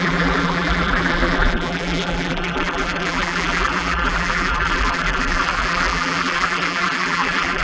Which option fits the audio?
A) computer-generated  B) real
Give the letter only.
A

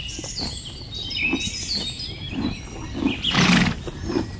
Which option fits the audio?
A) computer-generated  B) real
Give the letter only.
B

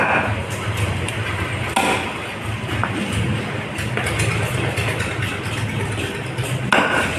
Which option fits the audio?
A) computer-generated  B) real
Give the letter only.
B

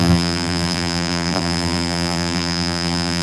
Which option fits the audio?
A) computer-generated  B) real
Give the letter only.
A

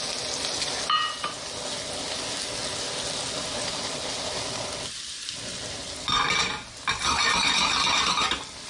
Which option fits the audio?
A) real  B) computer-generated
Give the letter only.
A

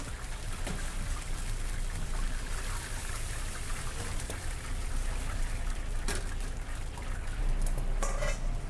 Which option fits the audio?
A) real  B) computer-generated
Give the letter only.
A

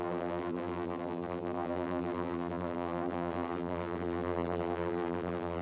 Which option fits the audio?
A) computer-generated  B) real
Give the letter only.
A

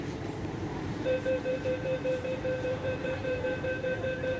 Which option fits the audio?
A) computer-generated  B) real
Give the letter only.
A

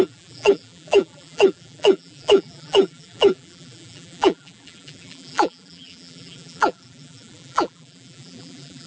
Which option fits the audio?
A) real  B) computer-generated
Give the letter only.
B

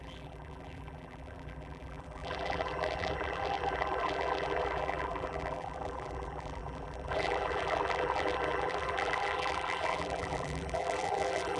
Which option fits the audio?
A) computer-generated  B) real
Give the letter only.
A